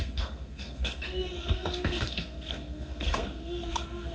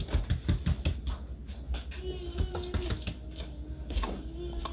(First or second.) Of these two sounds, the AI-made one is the first